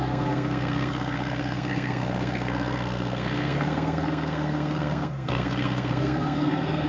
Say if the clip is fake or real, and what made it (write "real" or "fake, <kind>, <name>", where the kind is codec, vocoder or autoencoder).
fake, codec, SNAC